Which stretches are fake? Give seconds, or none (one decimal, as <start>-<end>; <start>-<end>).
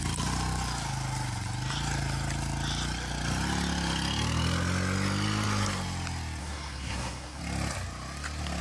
6.4-7.4